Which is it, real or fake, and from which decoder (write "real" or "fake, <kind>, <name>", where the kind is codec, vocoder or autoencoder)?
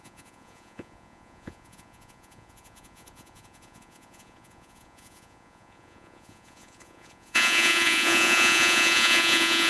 fake, vocoder, Vocos